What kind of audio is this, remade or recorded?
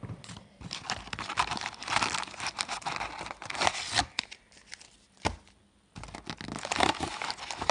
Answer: recorded